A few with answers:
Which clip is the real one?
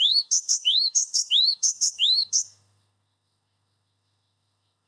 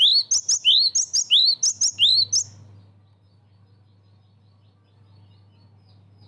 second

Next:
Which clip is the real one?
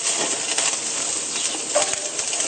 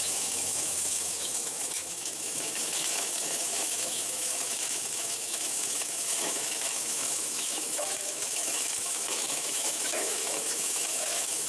first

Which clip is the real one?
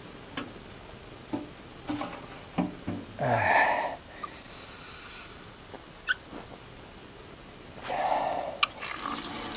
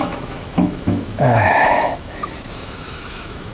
first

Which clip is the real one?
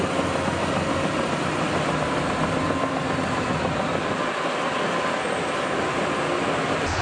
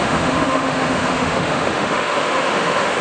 first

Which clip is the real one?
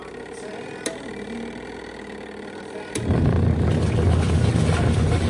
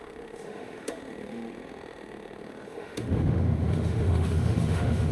first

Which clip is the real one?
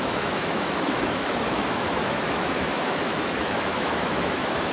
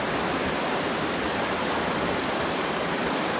second